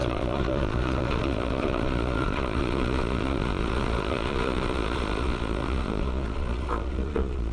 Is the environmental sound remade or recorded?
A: remade